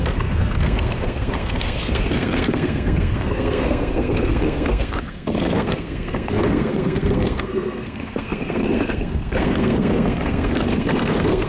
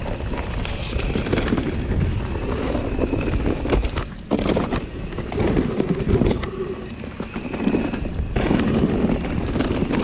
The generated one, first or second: first